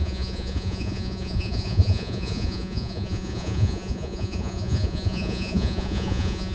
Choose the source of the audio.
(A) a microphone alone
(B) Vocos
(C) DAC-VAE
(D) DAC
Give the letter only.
B